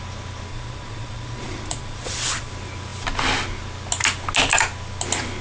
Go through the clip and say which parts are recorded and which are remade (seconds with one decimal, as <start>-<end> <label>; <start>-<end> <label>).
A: 0.0-0.5 recorded; 0.5-2.5 remade; 2.5-5.4 recorded